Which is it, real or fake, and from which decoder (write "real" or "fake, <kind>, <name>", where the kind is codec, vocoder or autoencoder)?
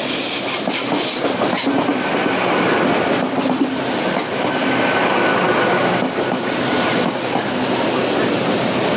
real